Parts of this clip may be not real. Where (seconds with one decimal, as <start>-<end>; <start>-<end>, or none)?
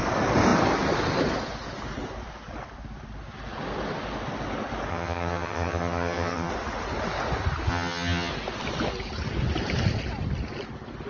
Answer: 4.9-6.5; 7.7-8.3